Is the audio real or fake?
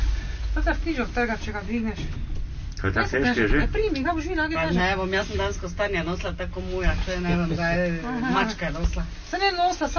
real